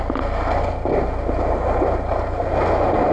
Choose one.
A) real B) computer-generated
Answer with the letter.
A